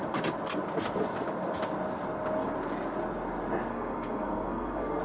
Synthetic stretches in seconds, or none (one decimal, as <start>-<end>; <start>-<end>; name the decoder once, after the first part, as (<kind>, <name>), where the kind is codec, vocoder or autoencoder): 3.7-5.0 (codec, SNAC)